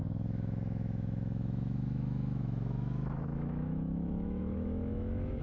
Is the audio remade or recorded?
remade